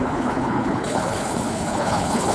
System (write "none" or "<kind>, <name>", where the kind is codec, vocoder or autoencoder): codec, HILCodec